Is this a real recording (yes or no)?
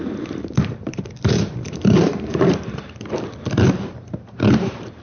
no